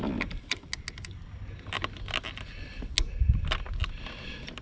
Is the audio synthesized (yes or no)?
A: no